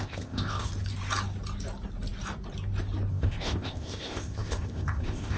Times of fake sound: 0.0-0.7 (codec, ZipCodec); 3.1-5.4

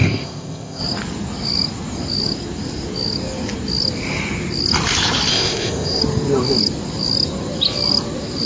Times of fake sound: 0.0-0.8 (codec, ZipCodec); 5.3-6.0

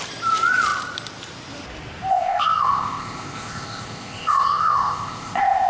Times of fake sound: 2.1-5.7 (codec, ZipCodec)